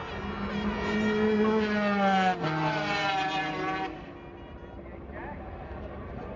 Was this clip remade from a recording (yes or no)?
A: no